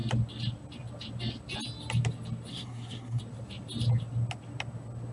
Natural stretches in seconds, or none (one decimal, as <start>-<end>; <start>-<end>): 0.0-2.5; 3.2-5.1